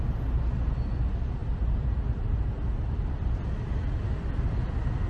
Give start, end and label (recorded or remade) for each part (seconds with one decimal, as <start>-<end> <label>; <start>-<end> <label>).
0.0-5.1 recorded